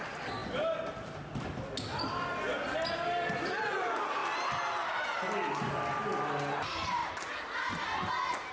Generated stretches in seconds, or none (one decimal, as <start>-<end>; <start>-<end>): 7.0-7.7